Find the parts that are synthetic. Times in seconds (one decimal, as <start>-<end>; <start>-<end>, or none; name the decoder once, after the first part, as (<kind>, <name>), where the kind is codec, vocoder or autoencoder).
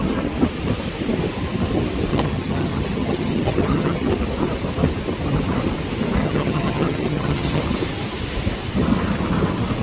2.1-4.1 (vocoder, HiFi-GAN); 6.2-7.6